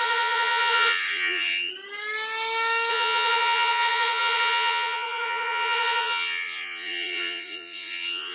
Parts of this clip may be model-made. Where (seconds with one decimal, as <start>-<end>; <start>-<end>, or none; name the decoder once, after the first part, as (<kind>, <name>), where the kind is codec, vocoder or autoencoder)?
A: 0.0-1.7 (vocoder, Vocos); 2.9-8.3